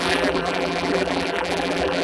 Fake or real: fake